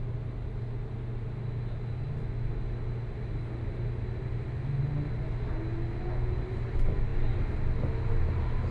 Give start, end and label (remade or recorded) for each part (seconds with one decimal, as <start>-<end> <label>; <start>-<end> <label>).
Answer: 0.0-8.7 recorded